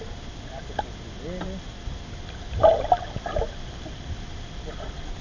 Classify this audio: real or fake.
real